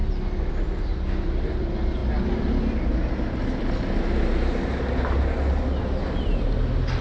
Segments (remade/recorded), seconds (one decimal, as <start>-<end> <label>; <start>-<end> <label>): 0.0-7.0 recorded